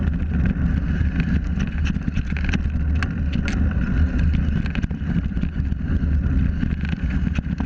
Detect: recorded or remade recorded